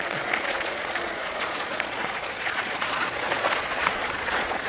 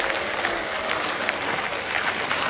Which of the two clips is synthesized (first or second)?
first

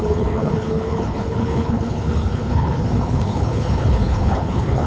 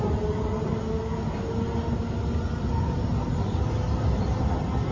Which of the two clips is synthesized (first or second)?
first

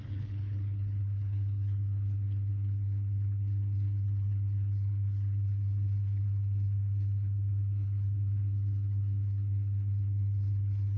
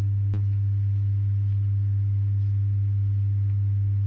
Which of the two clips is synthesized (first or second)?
first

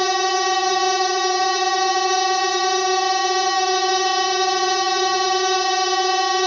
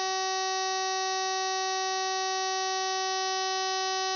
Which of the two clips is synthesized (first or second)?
first